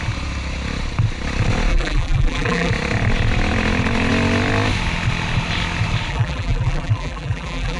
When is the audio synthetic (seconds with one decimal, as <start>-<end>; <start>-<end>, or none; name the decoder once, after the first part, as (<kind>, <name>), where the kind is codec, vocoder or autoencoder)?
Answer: 1.7-2.7 (vocoder, BigVGAN v2); 6.1-7.8